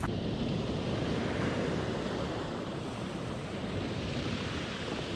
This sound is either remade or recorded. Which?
remade